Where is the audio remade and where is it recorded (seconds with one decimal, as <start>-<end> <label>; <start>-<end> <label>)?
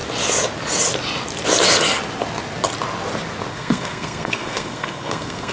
0.0-3.5 recorded; 3.5-5.5 remade